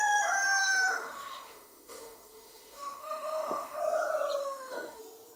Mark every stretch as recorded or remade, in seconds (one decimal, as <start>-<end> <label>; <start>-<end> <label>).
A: 0.0-0.6 recorded; 0.6-3.8 remade; 3.8-4.4 recorded; 4.4-5.0 remade; 5.0-5.4 recorded